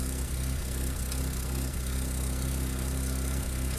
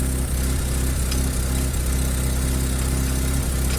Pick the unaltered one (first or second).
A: second